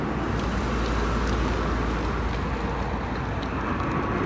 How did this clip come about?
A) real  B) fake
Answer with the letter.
A